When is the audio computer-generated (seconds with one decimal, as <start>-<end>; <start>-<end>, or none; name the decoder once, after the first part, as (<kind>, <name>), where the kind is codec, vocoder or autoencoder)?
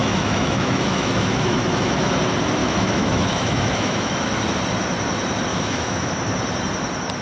0.0-2.1 (autoencoder, DAC-VAE); 2.6-4.2; 5.5-6.1